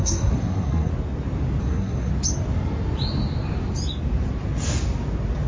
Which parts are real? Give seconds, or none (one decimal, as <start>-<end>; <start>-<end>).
0.9-1.6; 2.1-5.5